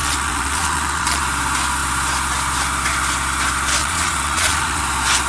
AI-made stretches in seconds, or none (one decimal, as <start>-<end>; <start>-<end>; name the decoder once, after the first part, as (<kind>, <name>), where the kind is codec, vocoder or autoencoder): 0.0-1.2 (vocoder, Vocos); 3.8-4.8